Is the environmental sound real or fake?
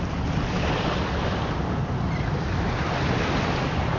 real